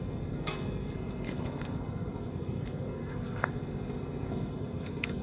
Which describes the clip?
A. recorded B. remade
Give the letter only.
B